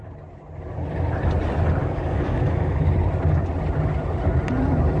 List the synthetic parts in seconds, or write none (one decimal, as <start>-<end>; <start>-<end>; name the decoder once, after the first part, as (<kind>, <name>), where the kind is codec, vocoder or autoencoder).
1.8-2.9 (codec, DAC)